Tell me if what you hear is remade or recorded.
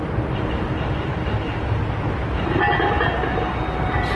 recorded